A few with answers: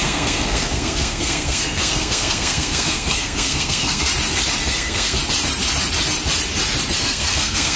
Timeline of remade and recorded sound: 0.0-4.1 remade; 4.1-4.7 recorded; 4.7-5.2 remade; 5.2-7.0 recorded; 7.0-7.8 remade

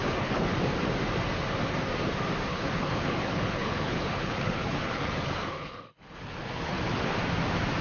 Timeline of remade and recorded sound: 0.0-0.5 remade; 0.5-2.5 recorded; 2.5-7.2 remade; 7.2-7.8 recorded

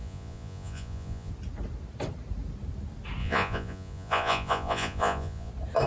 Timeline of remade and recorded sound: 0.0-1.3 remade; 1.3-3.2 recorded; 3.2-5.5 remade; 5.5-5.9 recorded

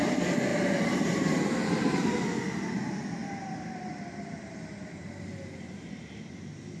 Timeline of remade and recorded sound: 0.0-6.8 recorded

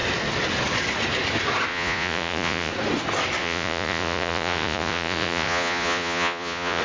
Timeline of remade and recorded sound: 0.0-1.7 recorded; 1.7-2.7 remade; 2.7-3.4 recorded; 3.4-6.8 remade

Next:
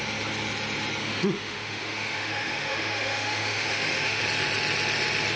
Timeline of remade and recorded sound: 0.0-1.0 recorded; 1.0-4.2 remade; 4.2-5.4 recorded